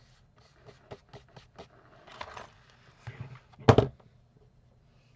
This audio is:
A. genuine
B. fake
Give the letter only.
A